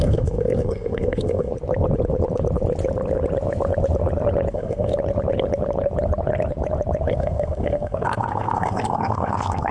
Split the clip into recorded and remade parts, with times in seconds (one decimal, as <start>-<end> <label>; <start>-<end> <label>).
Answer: 0.0-1.5 remade; 1.5-4.5 recorded; 4.5-4.9 remade; 4.9-7.1 recorded; 7.1-9.7 remade

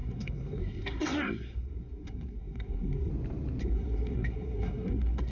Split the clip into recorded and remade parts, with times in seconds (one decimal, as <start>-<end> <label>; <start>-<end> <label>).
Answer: 0.0-3.1 remade; 3.1-3.6 recorded; 3.6-5.3 remade